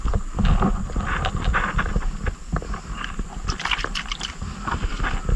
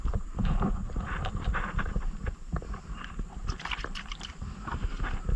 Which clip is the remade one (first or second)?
second